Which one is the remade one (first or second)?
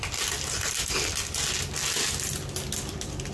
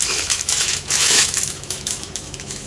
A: second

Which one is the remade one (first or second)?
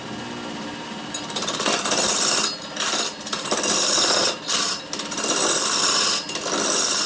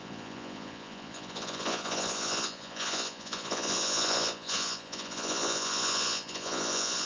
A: second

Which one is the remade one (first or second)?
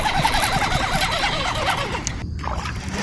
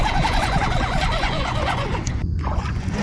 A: second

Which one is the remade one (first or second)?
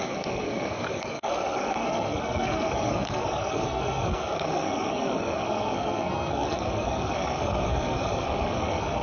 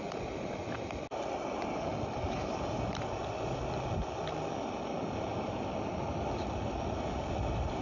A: first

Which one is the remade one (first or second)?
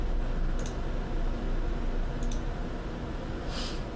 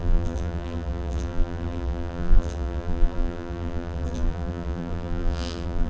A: second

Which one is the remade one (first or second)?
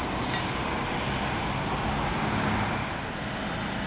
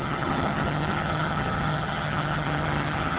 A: second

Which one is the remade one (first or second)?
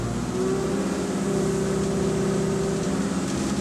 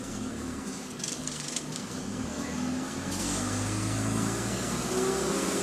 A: second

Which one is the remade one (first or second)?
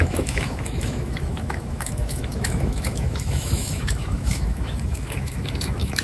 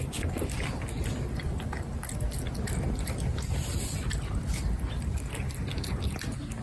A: first